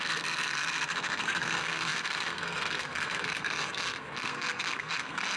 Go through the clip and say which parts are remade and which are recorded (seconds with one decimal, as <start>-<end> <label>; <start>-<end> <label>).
0.0-5.4 remade